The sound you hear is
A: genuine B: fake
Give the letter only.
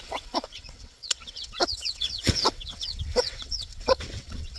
B